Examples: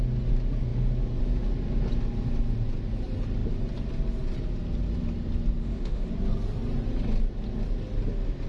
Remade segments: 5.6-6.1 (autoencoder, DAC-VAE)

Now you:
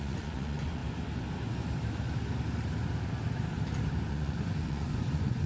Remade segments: 0.0-0.8 (vocoder, Vocos); 4.1-5.5

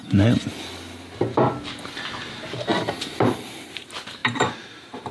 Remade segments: 4.2-5.1 (vocoder, BigVGAN v2)

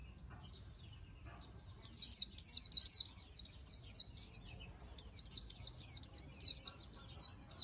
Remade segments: none

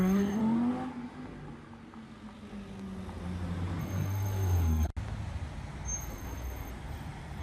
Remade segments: 0.0-0.4 (codec, SNAC); 3.8-4.9; 6.1-6.7

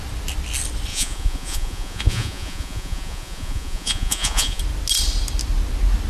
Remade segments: 0.9-4.6 (vocoder, Vocos)